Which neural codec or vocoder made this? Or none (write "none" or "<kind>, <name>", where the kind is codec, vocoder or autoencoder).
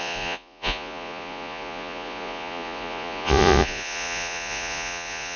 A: vocoder, Vocos